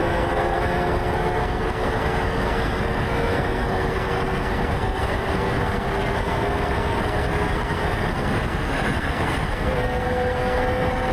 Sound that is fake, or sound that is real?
fake